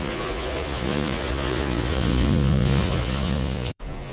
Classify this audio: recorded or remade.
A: remade